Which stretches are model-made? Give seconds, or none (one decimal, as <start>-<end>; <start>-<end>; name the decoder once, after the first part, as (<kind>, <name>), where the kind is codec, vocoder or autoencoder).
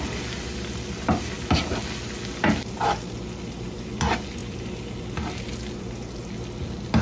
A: none